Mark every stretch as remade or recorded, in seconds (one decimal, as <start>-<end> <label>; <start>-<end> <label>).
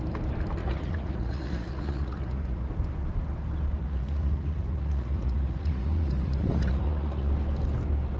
0.0-0.6 recorded; 0.6-2.7 remade; 2.7-3.8 recorded; 3.8-7.3 remade; 7.3-8.2 recorded